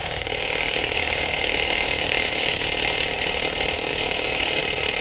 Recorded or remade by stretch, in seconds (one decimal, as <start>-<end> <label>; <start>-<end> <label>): 0.0-2.6 remade; 2.6-3.9 recorded; 3.9-4.6 remade; 4.6-5.0 recorded